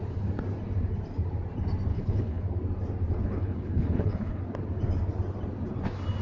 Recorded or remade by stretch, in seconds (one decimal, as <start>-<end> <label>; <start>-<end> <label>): 0.0-1.9 recorded; 1.9-2.4 remade; 2.4-3.2 recorded; 3.2-4.4 remade; 4.4-6.2 recorded